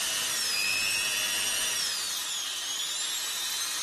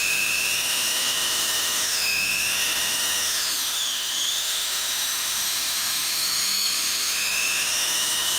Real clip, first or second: first